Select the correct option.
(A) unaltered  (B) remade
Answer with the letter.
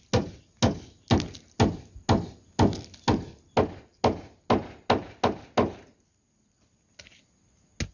A